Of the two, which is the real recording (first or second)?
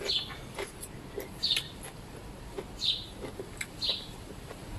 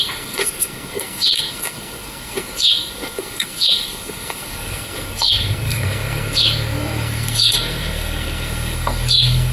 first